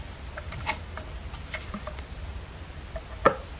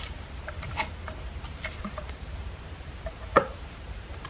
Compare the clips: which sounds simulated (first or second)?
second